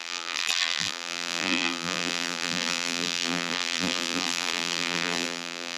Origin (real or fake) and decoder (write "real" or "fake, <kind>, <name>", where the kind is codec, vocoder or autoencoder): fake, vocoder, BigVGAN v2